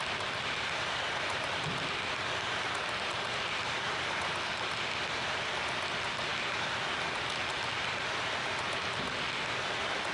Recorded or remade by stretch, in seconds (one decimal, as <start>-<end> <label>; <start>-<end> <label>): 0.0-10.1 recorded